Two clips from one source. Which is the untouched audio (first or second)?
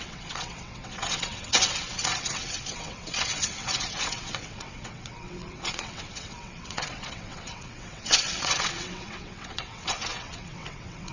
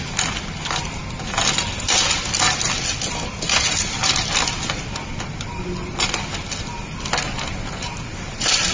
second